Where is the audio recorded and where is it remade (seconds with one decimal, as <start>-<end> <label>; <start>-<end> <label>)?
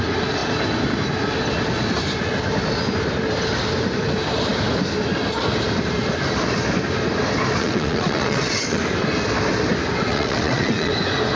0.0-7.6 recorded; 7.6-8.8 remade; 8.8-10.1 recorded; 10.1-10.9 remade; 10.9-11.4 recorded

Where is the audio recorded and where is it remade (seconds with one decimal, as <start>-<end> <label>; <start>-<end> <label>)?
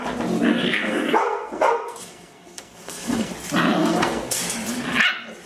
0.0-0.5 recorded; 0.5-3.3 remade; 3.3-3.8 recorded; 3.8-4.4 remade; 4.4-5.5 recorded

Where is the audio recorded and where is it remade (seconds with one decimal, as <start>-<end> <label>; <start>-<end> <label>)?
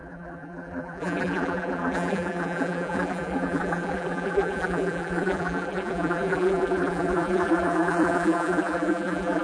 0.0-9.4 remade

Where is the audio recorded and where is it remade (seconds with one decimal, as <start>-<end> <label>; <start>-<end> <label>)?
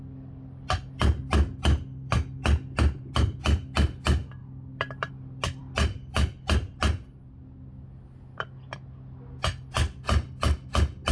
0.0-11.1 recorded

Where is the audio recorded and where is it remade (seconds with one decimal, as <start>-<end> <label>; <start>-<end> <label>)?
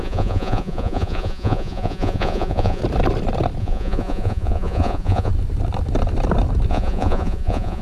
0.0-2.8 remade; 2.8-3.6 recorded; 3.6-5.3 remade; 5.3-6.7 recorded; 6.7-7.8 remade